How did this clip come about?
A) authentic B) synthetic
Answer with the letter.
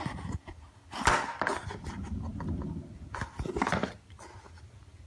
A